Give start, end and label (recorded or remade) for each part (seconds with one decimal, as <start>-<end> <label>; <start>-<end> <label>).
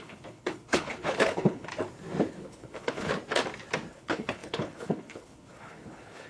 0.0-1.7 remade; 1.7-2.3 recorded; 2.3-3.1 remade; 3.1-3.9 recorded; 3.9-6.3 remade